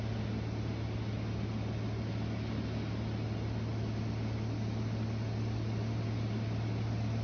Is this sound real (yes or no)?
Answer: yes